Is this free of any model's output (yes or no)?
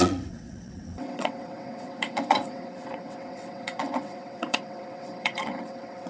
no